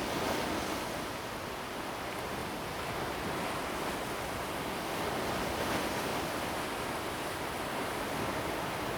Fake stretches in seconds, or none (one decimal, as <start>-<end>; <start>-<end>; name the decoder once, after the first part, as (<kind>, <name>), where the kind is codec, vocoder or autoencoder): none